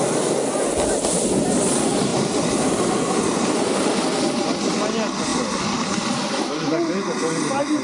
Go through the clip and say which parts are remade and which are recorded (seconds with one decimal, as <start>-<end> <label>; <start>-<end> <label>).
0.0-2.1 recorded; 2.1-2.7 remade; 2.7-7.8 recorded